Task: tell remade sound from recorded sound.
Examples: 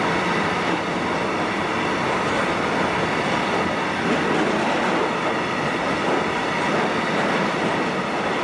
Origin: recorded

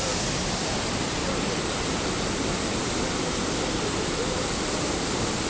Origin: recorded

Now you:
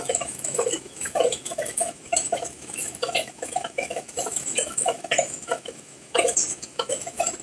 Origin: remade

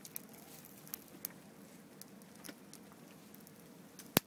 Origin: recorded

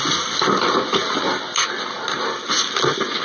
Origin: recorded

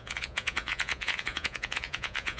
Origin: remade